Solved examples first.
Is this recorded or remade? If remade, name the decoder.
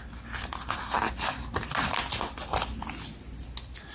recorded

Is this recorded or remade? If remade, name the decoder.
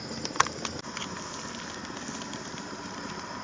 recorded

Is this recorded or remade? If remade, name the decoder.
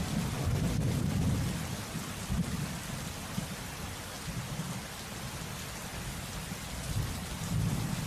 recorded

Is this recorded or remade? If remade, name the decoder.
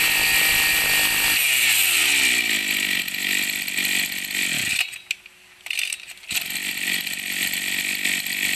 recorded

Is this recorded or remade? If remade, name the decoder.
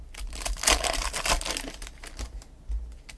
recorded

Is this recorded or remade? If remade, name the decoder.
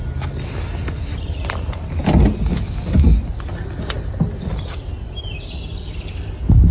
recorded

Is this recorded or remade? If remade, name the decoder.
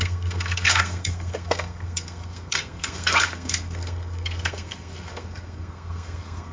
remade, codec, SNAC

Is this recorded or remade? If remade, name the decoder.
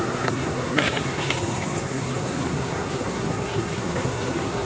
remade, codec, SNAC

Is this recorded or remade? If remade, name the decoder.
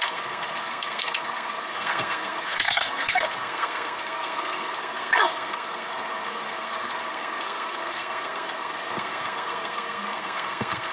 remade, codec, SNAC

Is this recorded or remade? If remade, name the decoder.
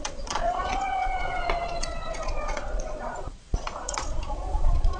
remade, vocoder, Vocos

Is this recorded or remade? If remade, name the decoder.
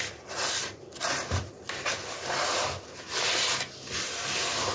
recorded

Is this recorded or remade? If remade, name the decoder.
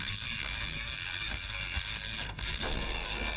remade, codec, SNAC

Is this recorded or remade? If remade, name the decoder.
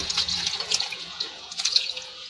remade, vocoder, Vocos